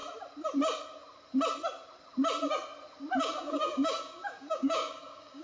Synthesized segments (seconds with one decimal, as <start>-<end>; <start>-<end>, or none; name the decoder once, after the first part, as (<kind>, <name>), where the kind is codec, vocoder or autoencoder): 3.2-5.4 (codec, DAC)